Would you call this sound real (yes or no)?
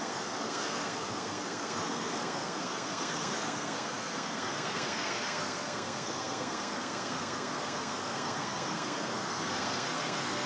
no